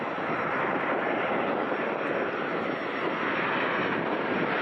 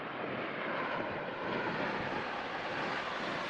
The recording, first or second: first